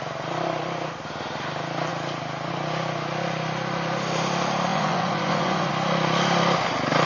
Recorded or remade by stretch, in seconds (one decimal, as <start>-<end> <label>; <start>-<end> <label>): 0.0-4.7 recorded; 4.7-5.7 remade; 5.7-7.1 recorded